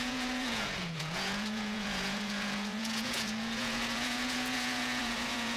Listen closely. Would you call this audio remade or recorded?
remade